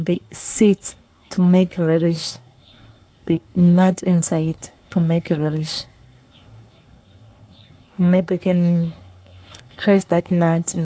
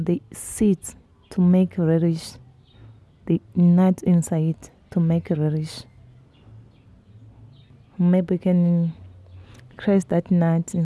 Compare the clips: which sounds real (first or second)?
second